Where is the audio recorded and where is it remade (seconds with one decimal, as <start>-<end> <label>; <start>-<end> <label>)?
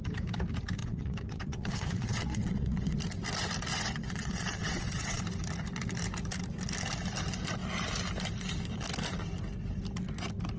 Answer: 0.0-0.8 recorded; 0.8-3.0 remade; 3.0-3.7 recorded; 3.7-5.2 remade; 5.2-10.6 recorded